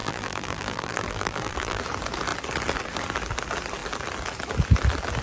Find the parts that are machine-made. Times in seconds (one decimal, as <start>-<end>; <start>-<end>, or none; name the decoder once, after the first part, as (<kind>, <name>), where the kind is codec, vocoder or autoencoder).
0.0-1.8 (vocoder, BigVGAN v2)